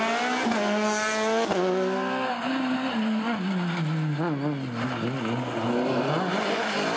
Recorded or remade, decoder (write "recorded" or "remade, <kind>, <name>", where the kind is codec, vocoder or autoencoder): recorded